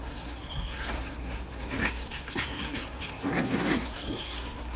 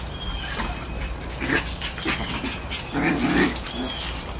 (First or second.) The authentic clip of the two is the second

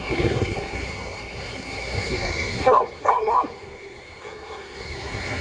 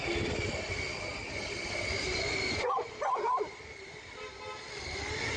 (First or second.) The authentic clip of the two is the second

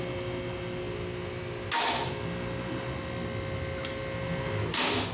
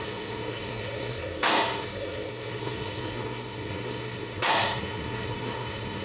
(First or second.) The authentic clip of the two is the first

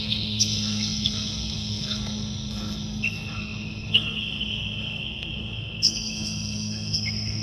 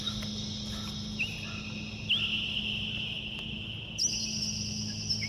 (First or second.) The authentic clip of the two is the second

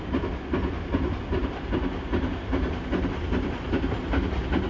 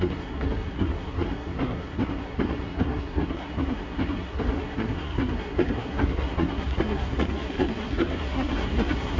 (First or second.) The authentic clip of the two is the first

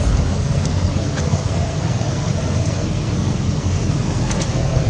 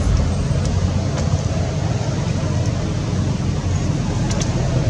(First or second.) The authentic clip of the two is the second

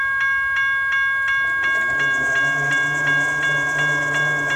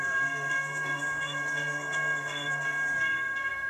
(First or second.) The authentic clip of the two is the first